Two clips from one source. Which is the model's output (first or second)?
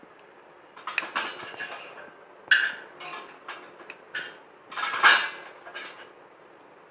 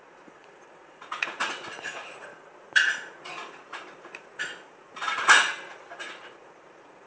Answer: second